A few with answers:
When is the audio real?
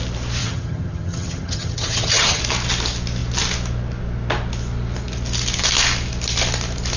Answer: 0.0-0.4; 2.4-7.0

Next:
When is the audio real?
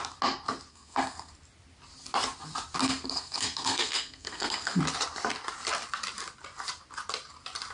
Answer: 0.0-0.7; 1.3-2.8; 4.8-7.7